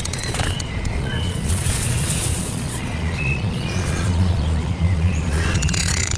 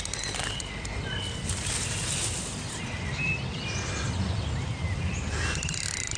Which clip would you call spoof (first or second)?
first